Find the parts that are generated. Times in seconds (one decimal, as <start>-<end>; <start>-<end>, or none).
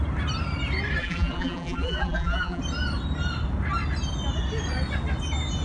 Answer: 1.0-2.6